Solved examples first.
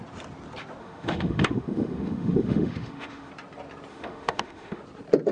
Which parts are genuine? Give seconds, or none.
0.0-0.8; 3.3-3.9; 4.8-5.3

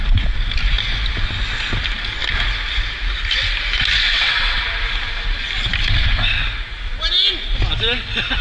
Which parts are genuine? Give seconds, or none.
0.0-4.0; 4.6-8.4

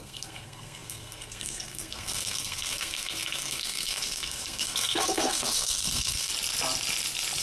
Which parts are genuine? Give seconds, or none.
6.3-7.4

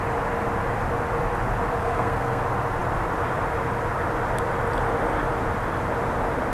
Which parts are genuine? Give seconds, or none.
0.0-1.8; 2.4-6.5

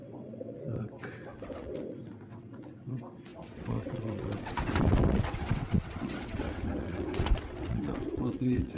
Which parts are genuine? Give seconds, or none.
none

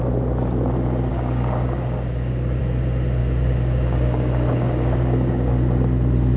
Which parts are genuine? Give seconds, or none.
0.0-1.1; 2.6-3.2; 5.5-6.4